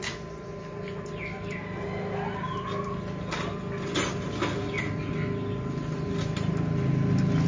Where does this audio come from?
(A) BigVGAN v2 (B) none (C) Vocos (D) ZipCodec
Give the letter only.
B